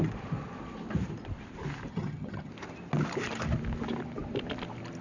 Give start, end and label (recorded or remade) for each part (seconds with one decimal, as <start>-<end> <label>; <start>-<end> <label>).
0.0-1.9 recorded; 1.9-2.5 remade; 2.5-5.0 recorded